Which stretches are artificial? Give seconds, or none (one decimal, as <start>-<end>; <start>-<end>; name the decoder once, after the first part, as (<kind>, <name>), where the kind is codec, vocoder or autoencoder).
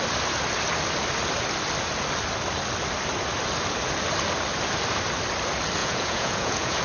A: 5.8-6.8 (vocoder, Vocos)